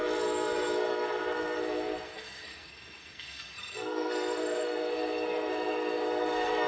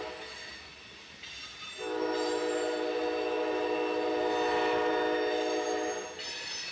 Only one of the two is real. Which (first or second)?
second